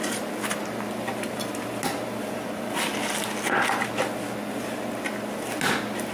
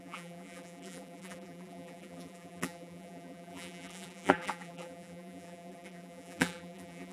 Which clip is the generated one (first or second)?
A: second